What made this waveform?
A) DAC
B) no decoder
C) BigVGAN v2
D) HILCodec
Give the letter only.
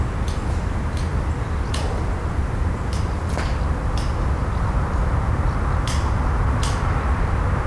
B